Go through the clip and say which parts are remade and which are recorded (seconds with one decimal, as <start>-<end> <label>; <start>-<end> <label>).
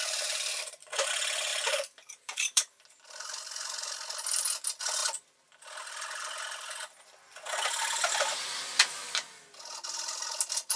0.0-1.1 remade; 1.1-1.5 recorded; 1.5-2.8 remade; 2.8-10.8 recorded